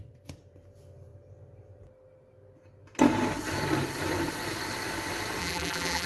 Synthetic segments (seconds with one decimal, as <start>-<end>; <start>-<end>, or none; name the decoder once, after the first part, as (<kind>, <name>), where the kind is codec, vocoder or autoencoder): 5.4-6.1 (vocoder, BigVGAN v2)